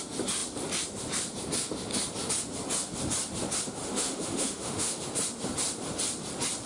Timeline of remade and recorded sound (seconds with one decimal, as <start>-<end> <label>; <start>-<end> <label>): 0.0-3.8 recorded; 3.8-5.0 remade; 5.0-6.7 recorded